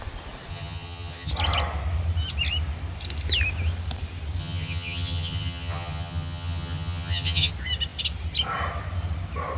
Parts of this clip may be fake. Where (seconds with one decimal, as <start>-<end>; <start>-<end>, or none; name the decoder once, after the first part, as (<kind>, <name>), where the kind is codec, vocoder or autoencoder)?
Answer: 0.5-1.3 (vocoder, HiFi-GAN); 4.4-7.5